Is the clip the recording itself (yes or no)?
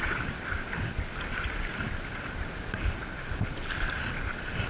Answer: yes